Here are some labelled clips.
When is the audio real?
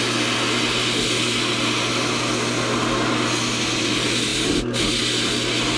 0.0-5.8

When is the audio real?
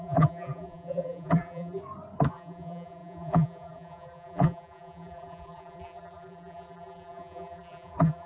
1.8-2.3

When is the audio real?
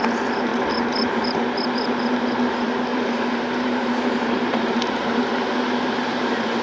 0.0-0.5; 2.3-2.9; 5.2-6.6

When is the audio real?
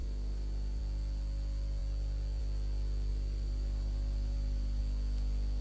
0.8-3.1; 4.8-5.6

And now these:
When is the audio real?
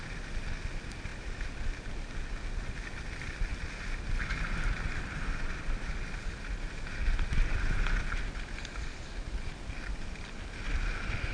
0.0-11.3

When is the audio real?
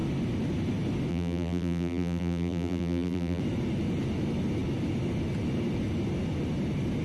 0.0-1.1; 3.4-7.0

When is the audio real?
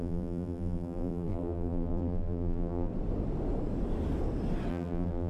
2.9-4.7